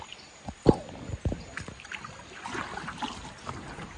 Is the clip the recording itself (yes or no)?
yes